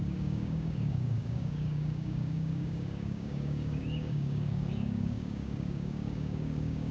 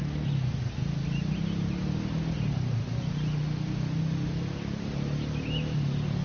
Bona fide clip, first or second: second